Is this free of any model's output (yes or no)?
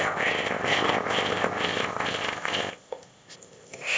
no